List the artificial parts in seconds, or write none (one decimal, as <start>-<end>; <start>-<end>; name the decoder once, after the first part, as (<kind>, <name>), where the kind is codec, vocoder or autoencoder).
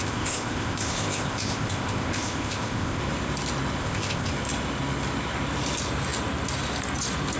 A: 0.0-3.0 (codec, ZipCodec); 3.8-4.3